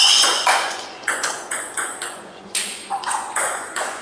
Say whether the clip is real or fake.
fake